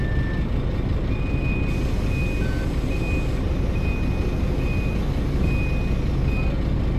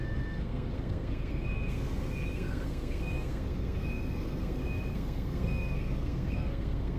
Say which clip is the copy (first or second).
second